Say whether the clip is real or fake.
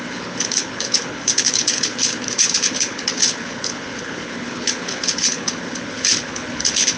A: fake